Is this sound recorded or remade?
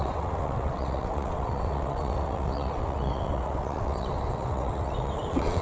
remade